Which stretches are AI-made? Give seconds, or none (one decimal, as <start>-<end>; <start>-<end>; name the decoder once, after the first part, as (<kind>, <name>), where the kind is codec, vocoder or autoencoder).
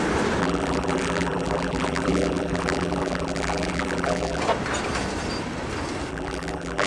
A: 0.4-4.4 (vocoder, BigVGAN v2); 6.1-6.9